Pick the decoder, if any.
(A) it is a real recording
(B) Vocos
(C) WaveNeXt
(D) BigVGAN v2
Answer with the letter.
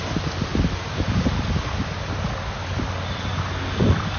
A